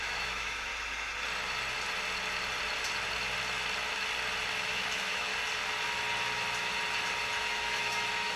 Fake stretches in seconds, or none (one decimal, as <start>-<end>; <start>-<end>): 0.0-0.7; 4.5-5.3; 7.4-8.4